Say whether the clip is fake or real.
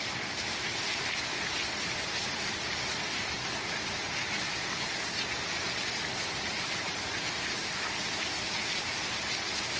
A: real